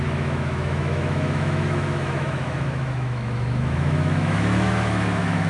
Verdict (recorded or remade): remade